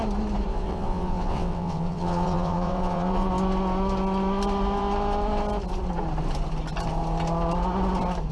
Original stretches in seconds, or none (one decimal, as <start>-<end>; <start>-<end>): 0.0-0.5; 3.3-8.3